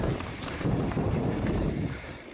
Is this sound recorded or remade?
remade